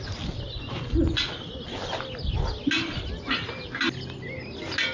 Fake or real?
real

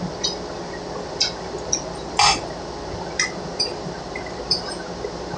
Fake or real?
real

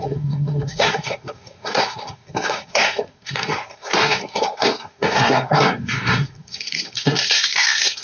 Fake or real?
fake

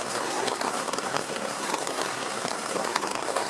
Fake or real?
fake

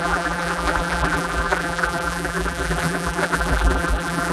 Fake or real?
fake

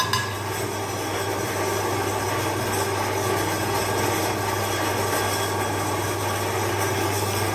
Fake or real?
real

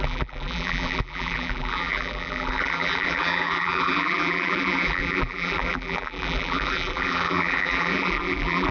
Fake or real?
fake